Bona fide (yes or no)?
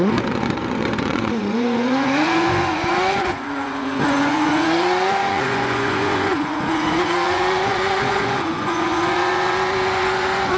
no